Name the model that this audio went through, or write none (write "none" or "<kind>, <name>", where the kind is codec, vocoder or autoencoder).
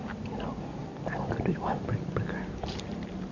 vocoder, BigVGAN v2